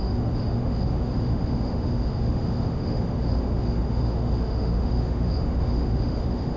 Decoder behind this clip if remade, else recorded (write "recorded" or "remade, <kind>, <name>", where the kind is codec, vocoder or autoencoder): remade, autoencoder, DAC-VAE